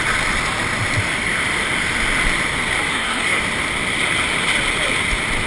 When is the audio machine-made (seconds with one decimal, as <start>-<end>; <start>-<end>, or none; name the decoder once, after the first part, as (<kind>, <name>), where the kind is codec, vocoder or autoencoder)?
2.9-3.4 (codec, SNAC)